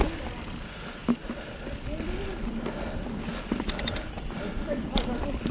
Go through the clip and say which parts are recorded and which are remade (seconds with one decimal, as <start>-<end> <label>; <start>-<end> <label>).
0.0-5.5 recorded